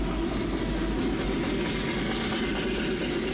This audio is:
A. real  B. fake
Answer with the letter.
A